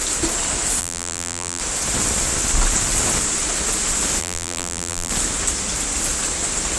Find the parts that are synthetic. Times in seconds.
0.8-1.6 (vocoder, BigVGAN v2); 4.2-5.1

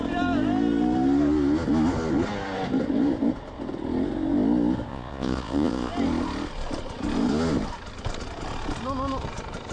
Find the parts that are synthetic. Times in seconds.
4.9-5.9 (vocoder, Vocos)

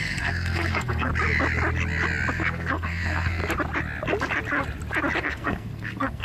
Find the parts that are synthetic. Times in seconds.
0.0-1.1 (codec, SNAC); 2.3-3.4; 5.2-6.2

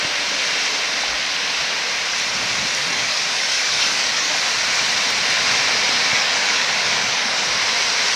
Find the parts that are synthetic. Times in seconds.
2.8-4.3 (codec, DAC); 6.1-7.5

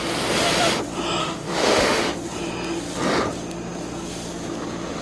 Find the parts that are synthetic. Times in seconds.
1.2-2.1 (autoencoder, DAC-VAE)

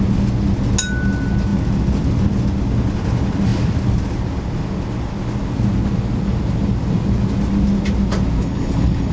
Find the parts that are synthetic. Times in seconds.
8.4-9.1 (codec, HILCodec)